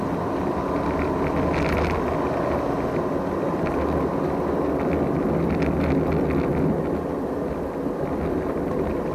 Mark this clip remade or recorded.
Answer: recorded